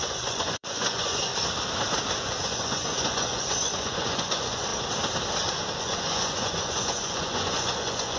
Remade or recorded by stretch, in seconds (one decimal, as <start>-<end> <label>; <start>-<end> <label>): 0.0-1.3 remade; 1.3-2.2 recorded; 2.2-4.7 remade; 4.7-5.8 recorded; 5.8-8.2 remade